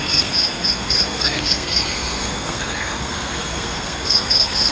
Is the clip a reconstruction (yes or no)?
yes